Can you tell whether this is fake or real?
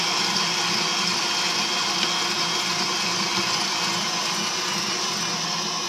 real